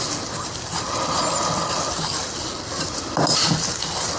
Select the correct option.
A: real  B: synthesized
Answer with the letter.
A